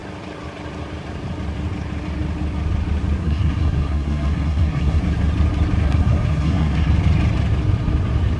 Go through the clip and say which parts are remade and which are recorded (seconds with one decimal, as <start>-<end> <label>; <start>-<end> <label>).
0.0-3.2 recorded; 3.2-5.0 remade; 5.0-5.8 recorded; 5.8-6.9 remade; 6.9-8.4 recorded